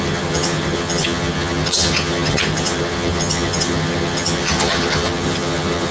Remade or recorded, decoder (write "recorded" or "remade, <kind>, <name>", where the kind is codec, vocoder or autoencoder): remade, vocoder, HiFi-GAN